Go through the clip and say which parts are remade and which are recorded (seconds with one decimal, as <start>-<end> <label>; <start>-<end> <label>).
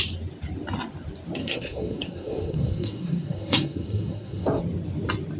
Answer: 0.0-1.4 recorded; 1.4-4.6 remade; 4.6-5.4 recorded